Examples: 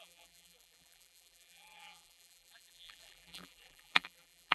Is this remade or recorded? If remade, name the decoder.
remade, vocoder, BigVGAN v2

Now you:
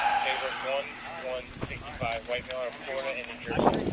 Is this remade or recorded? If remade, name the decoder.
recorded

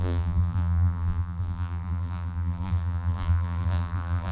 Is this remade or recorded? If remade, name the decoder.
remade, vocoder, BigVGAN v2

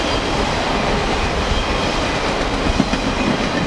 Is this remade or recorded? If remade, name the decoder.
recorded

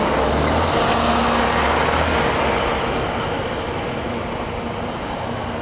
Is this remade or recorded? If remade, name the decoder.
recorded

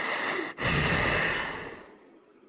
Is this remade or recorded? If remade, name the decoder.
recorded